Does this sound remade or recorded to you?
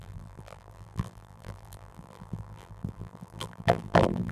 remade